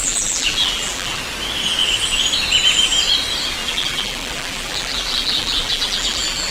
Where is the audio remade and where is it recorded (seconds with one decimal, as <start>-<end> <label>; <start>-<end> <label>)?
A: 0.0-1.2 remade; 1.2-3.6 recorded; 3.6-6.5 remade